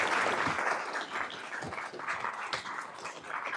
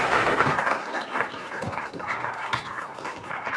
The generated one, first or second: second